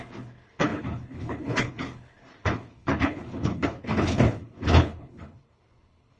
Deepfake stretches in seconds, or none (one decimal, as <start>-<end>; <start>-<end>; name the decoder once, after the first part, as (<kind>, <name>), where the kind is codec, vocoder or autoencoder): 0.0-6.2 (codec, HILCodec)